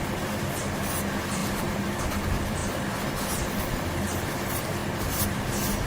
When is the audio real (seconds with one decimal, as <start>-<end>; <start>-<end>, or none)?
2.6-3.6; 4.8-5.9